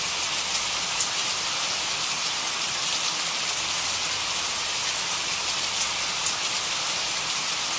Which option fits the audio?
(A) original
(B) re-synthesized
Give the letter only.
A